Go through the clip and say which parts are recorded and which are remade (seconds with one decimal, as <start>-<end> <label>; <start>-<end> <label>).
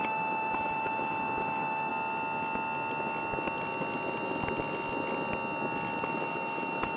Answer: 0.0-1.9 remade; 1.9-6.1 recorded; 6.1-7.0 remade